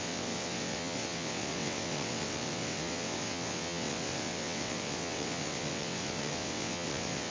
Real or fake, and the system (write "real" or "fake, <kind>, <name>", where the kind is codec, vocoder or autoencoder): fake, vocoder, WaveNeXt